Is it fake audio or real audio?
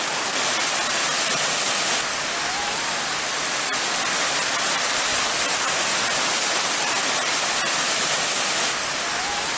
real